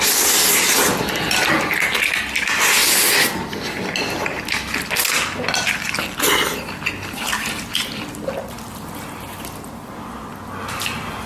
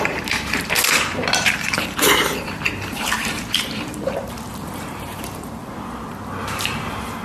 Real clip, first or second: first